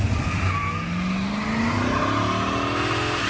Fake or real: real